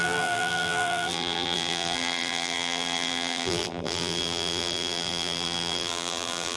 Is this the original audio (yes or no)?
no